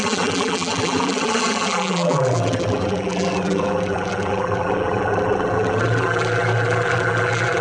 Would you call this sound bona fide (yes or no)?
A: no